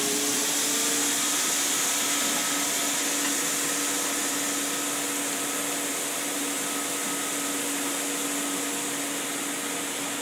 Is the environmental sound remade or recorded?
recorded